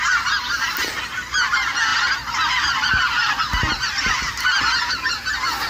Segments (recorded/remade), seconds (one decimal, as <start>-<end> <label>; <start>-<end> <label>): 0.0-5.7 recorded